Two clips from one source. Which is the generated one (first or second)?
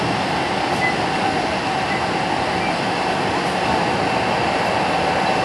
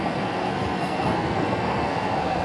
second